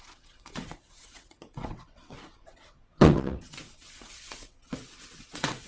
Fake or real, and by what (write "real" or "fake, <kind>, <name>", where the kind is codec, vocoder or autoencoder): fake, vocoder, WaveNeXt